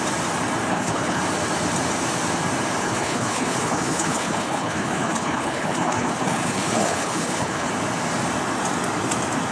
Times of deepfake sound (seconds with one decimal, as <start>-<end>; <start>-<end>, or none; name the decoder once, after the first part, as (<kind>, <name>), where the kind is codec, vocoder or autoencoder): 0.7-1.2 (codec, HILCodec); 2.8-7.7